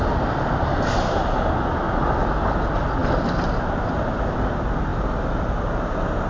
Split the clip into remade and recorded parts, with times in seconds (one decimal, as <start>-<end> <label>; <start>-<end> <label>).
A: 0.0-0.7 recorded; 0.7-1.2 remade; 1.2-6.3 recorded

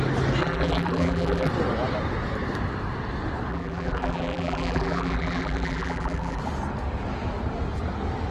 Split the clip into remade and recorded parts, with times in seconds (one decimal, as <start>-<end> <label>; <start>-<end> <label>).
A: 0.0-0.4 recorded; 0.4-1.5 remade; 1.5-3.5 recorded; 3.5-6.4 remade; 6.4-8.3 recorded

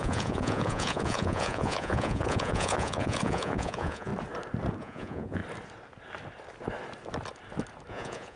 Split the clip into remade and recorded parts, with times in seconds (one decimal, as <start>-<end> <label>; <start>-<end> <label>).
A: 0.0-4.1 remade; 4.1-4.8 recorded; 4.8-5.4 remade; 5.4-7.9 recorded; 7.9-8.4 remade

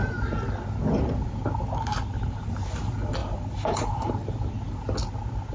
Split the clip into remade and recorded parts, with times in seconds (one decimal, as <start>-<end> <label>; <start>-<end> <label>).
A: 0.0-1.9 recorded; 1.9-2.7 remade; 2.7-3.2 recorded; 3.2-4.1 remade; 4.1-5.5 recorded

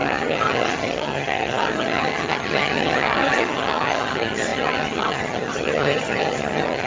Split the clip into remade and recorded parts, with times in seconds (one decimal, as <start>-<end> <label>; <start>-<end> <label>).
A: 0.0-6.9 remade

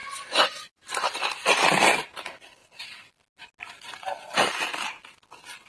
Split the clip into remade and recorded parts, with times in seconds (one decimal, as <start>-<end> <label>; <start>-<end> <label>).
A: 0.0-0.9 remade; 0.9-5.7 recorded